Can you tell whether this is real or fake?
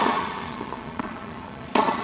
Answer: fake